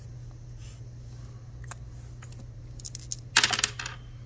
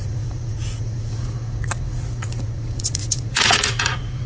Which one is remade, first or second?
second